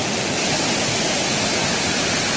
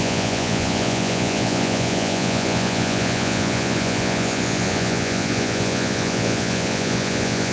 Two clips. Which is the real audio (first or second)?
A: first